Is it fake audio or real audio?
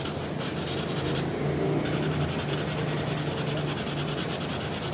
real